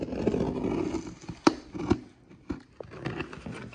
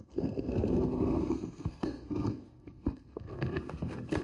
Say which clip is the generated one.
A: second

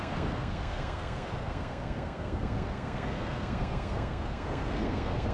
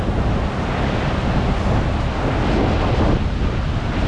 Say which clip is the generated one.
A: first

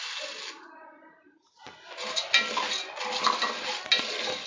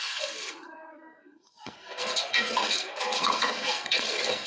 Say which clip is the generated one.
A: second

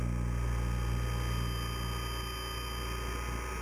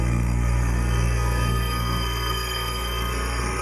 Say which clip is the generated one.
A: second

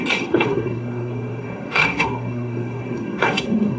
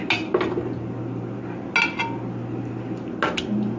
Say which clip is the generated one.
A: first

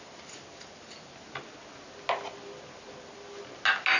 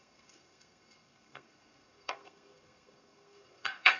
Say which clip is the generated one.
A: second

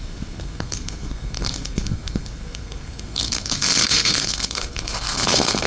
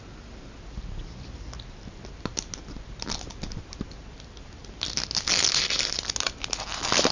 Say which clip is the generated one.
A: first